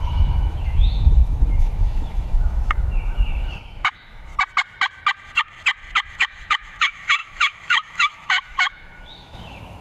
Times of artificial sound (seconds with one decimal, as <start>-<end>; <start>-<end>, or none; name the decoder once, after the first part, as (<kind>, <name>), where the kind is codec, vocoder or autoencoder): 0.0-4.3 (autoencoder, DAC-VAE); 6.1-9.8